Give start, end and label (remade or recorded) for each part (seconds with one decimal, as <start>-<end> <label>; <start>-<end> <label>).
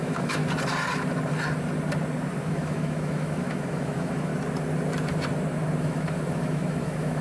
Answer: 0.0-0.4 remade; 0.4-2.4 recorded; 2.4-4.3 remade; 4.3-5.8 recorded; 5.8-7.2 remade